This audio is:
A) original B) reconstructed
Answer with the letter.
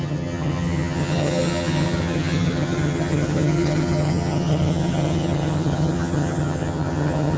B